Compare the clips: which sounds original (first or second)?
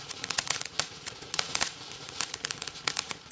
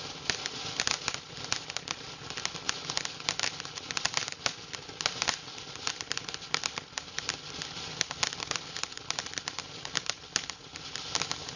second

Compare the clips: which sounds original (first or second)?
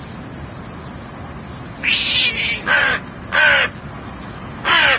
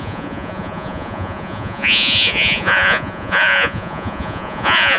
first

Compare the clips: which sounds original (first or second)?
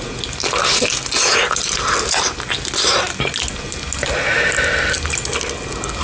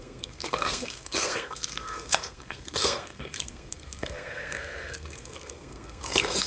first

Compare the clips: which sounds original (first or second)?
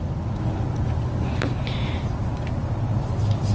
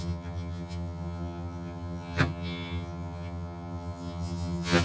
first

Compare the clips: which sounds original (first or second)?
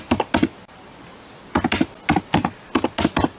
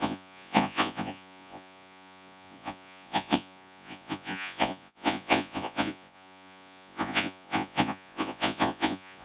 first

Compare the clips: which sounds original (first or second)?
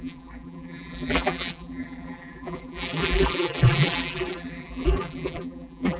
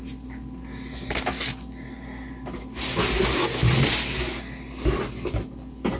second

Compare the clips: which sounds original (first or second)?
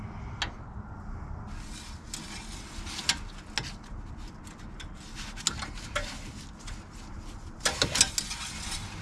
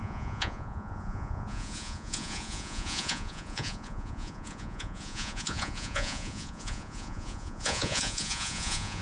first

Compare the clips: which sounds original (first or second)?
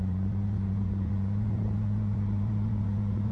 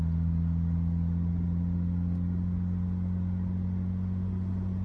second